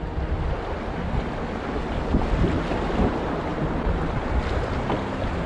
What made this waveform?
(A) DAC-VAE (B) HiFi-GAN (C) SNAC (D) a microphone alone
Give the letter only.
D